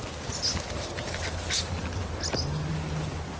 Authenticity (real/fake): real